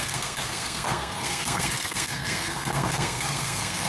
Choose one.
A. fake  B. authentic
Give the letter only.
A